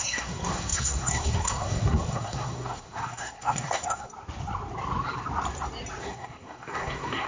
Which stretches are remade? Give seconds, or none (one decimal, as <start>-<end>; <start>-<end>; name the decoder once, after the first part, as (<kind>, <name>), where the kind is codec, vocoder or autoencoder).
0.0-4.1 (codec, SNAC); 6.0-7.3